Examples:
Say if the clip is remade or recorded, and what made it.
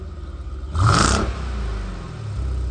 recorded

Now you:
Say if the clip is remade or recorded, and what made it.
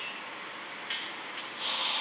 recorded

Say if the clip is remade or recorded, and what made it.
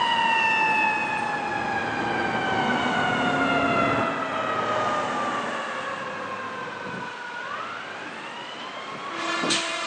recorded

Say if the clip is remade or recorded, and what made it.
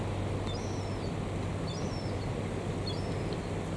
recorded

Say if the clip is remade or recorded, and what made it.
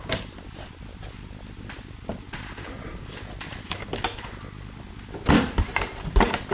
recorded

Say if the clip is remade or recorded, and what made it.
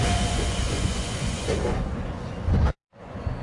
remade, vocoder, Vocos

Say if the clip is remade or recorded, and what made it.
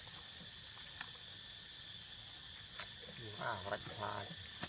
recorded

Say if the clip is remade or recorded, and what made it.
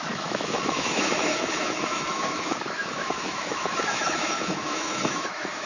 remade, autoencoder, DAC-VAE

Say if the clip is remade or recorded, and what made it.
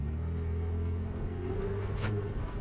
remade, codec, SNAC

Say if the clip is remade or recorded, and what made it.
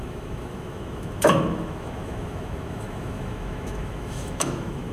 remade, autoencoder, DAC-VAE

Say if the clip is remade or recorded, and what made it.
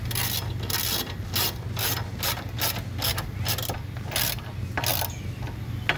recorded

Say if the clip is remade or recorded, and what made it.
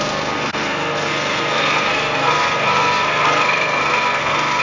remade, codec, SNAC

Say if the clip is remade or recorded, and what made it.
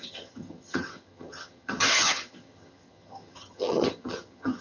remade, vocoder, HiFi-GAN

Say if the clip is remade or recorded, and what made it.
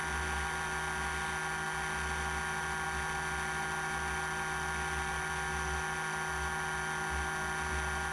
recorded